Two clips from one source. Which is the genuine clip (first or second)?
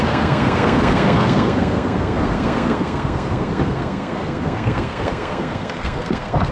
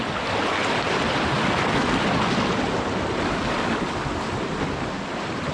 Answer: second